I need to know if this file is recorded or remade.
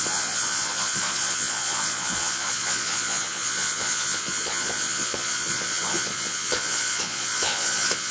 remade